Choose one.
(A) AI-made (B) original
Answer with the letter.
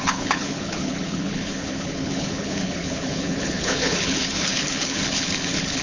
A